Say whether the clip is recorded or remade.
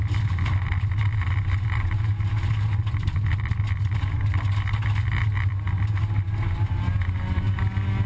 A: recorded